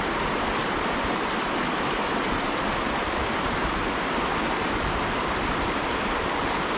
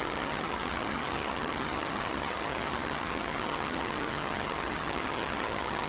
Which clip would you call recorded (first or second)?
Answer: first